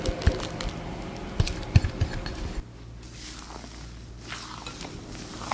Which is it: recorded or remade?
recorded